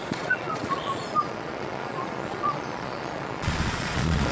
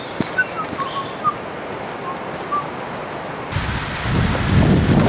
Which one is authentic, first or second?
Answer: second